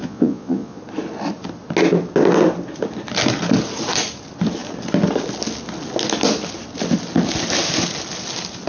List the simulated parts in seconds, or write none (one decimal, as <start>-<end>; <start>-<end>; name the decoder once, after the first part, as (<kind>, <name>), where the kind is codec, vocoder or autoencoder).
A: 0.0-0.8 (vocoder, Vocos)